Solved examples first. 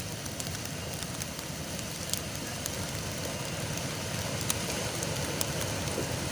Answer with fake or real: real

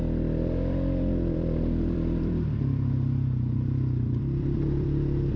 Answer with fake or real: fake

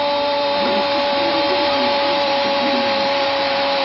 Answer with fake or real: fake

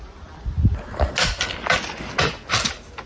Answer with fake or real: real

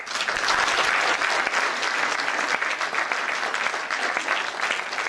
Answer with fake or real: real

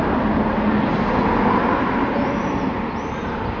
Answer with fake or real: real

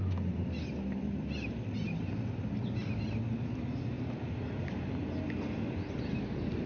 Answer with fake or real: real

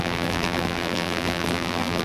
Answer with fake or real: fake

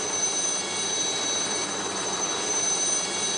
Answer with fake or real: fake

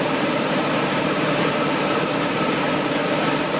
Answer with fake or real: fake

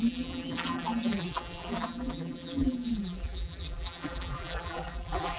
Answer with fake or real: fake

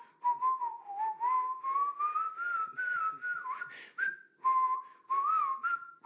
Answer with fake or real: real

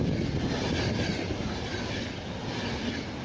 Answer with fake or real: real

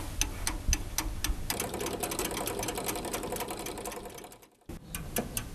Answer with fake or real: real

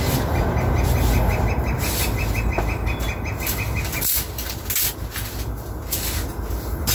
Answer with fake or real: real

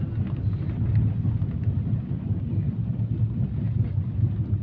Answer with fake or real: fake